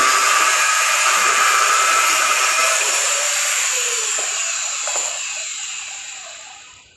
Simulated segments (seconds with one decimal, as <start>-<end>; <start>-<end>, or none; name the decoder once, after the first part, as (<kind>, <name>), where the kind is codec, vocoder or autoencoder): 0.0-7.0 (vocoder, BigVGAN v2)